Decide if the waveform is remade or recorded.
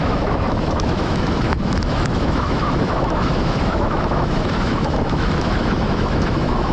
remade